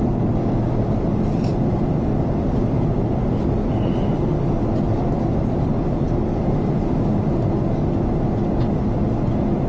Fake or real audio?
real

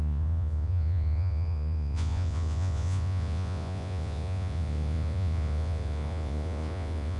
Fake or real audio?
fake